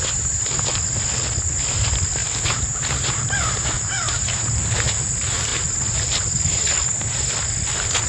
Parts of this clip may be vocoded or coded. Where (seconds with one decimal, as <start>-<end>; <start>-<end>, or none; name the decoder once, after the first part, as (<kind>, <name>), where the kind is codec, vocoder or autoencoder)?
2.2-4.9 (vocoder, BigVGAN v2)